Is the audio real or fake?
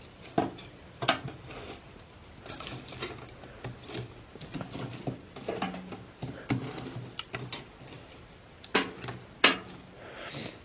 real